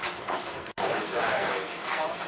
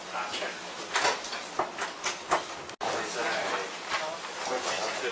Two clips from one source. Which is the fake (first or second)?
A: first